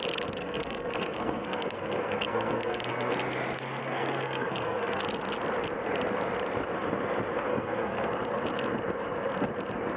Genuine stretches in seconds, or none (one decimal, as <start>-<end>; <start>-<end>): 0.0-0.4; 3.1-3.8; 5.0-7.5; 8.1-10.0